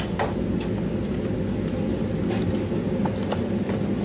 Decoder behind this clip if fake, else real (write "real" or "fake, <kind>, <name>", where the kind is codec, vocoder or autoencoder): real